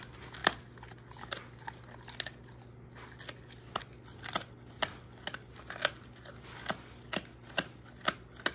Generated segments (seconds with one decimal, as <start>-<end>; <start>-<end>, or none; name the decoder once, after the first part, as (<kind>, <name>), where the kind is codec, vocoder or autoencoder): none